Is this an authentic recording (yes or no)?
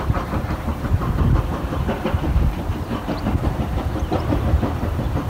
no